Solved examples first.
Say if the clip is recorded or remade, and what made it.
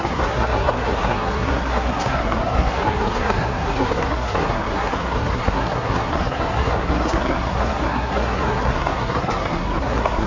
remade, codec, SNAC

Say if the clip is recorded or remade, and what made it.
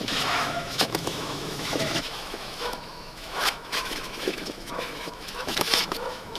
remade, autoencoder, DAC-VAE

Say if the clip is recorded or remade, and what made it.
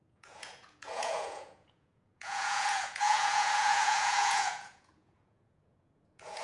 remade, vocoder, Vocos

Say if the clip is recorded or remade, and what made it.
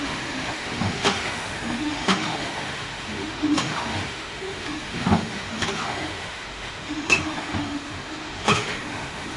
remade, autoencoder, DAC-VAE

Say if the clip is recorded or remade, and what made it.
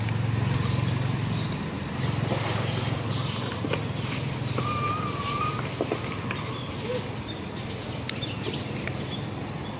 recorded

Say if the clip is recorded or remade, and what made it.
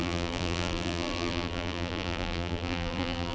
remade, vocoder, BigVGAN v2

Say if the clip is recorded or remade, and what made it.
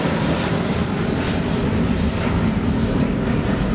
recorded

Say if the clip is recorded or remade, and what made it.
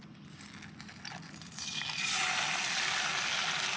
recorded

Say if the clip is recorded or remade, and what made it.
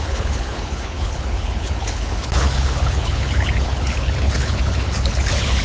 remade, codec, HILCodec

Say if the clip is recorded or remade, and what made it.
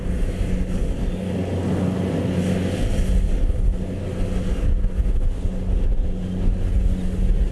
recorded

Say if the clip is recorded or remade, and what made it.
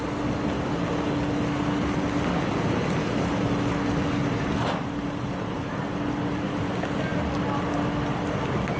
recorded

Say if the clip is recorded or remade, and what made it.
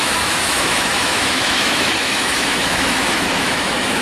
remade, autoencoder, DAC-VAE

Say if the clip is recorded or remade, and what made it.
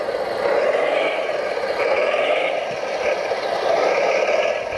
remade, vocoder, BigVGAN v2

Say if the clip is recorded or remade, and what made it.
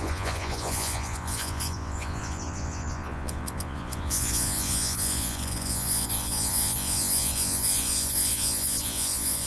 remade, vocoder, Vocos